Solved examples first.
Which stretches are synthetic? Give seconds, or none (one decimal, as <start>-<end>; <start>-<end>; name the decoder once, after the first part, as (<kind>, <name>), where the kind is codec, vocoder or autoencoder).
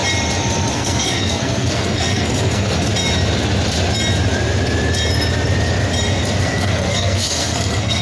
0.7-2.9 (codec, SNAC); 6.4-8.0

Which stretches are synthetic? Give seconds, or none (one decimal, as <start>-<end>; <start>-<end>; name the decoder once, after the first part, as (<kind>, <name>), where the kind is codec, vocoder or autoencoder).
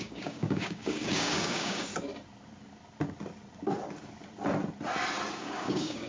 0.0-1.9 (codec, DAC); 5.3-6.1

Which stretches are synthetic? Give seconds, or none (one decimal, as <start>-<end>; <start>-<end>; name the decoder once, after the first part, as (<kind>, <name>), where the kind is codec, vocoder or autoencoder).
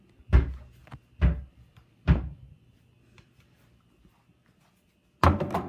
0.8-4.2 (vocoder, BigVGAN v2)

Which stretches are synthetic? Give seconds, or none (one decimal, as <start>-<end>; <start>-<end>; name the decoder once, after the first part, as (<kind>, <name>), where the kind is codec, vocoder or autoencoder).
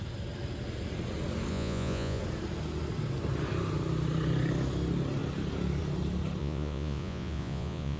1.5-2.2 (vocoder, Vocos); 6.4-8.0